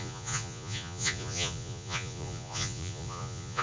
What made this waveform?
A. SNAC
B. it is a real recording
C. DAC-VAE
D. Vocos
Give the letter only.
D